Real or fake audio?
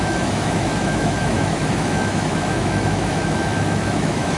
fake